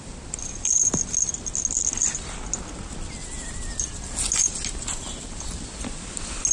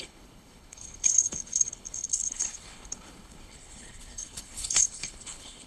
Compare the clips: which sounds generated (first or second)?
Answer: second